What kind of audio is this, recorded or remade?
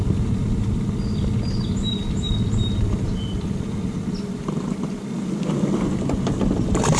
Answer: recorded